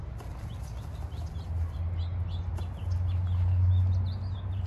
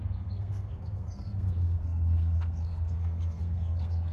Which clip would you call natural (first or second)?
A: first